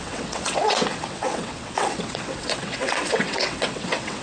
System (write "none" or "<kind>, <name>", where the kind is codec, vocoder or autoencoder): vocoder, WaveNeXt